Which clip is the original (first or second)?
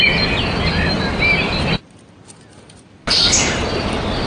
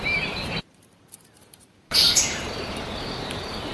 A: first